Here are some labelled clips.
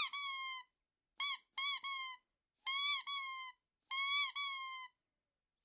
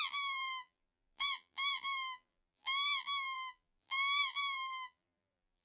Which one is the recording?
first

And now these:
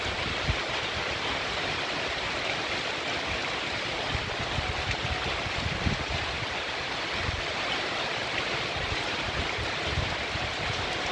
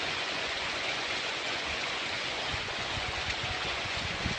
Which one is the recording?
first